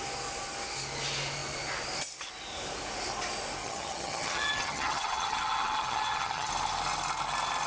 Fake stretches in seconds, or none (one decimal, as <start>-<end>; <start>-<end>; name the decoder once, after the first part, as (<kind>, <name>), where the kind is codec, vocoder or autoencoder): 3.6-6.5 (vocoder, HiFi-GAN)